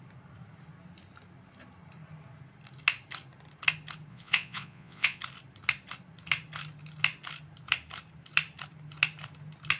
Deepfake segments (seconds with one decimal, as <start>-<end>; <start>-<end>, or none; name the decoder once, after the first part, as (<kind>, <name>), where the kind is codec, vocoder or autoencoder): 4.1-5.2 (vocoder, Vocos)